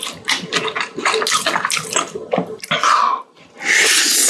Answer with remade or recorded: recorded